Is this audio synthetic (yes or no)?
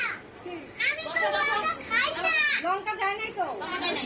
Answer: no